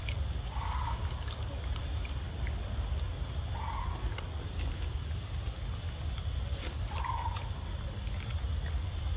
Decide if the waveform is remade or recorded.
recorded